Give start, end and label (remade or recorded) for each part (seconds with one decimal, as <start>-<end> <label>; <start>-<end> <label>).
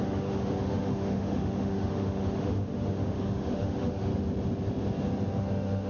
0.0-4.1 remade; 4.1-5.4 recorded; 5.4-5.9 remade